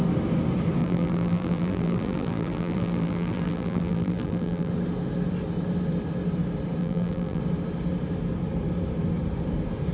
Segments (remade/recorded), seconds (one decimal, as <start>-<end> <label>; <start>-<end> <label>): 0.0-0.8 recorded; 0.8-4.7 remade; 4.7-6.8 recorded; 6.8-7.4 remade; 7.4-9.9 recorded